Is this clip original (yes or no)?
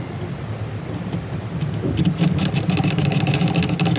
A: yes